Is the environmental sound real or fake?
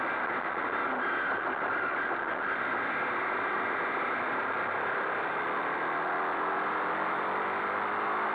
real